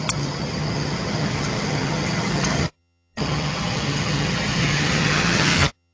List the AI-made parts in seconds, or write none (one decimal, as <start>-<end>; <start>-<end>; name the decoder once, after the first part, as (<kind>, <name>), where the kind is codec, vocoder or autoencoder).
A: 0.0-5.9 (vocoder, HiFi-GAN)